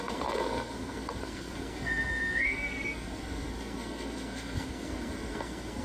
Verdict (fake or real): fake